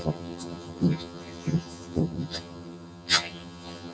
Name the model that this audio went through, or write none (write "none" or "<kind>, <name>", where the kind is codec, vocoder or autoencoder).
vocoder, HiFi-GAN